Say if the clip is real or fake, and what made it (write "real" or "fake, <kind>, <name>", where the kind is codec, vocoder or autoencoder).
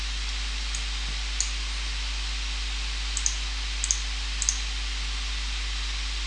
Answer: real